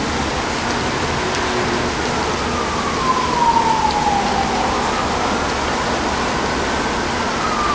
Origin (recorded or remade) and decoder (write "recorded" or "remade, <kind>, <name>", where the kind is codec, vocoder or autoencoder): recorded